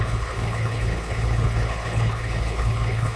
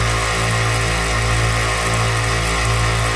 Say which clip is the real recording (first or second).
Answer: second